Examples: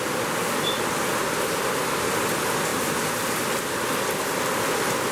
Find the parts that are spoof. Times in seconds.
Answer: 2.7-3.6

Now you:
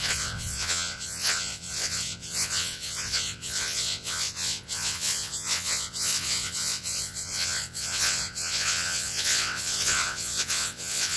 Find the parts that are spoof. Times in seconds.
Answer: 0.0-11.2